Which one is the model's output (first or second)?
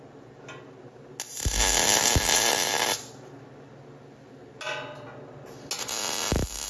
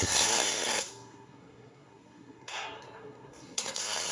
second